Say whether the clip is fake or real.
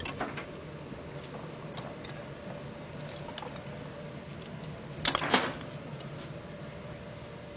real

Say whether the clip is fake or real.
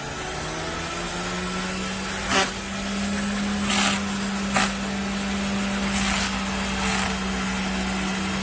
real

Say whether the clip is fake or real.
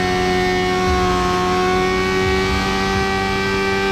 real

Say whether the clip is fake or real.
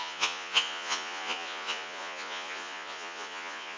fake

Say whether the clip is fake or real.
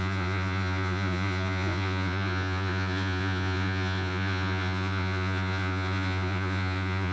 fake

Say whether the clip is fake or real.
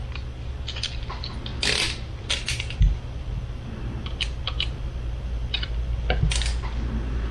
real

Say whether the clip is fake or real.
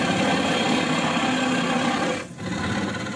real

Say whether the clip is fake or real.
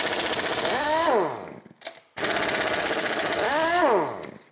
real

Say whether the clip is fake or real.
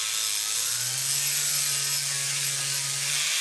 real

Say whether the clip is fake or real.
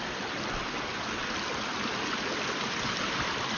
real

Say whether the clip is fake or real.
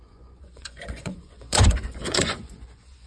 fake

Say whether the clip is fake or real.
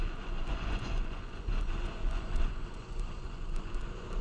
fake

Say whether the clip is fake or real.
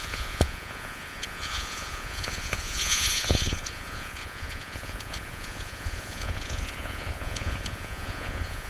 fake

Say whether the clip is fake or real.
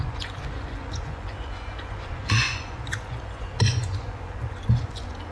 fake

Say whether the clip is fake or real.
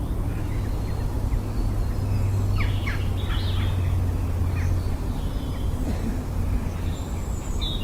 real